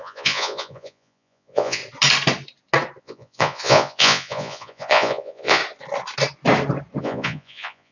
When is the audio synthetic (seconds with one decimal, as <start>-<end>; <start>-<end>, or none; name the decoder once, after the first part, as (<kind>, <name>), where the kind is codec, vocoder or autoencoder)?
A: 0.0-1.8 (vocoder, Vocos); 3.0-5.6; 7.0-7.9